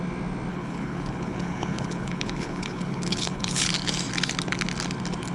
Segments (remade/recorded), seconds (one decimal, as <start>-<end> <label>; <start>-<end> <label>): 0.0-0.5 recorded; 0.5-3.7 remade; 3.7-5.3 recorded